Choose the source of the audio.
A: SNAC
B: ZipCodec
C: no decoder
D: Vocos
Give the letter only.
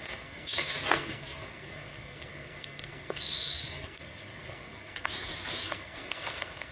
A